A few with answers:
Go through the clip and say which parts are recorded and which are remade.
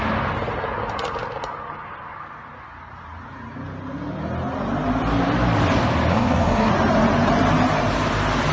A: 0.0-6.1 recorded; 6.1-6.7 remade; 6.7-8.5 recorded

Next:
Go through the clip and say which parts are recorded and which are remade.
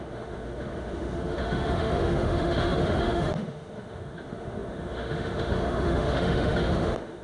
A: 0.0-7.2 remade